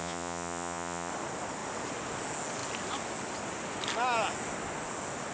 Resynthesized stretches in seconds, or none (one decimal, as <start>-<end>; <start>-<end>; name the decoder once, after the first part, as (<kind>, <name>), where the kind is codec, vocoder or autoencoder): 0.0-1.1 (vocoder, Vocos)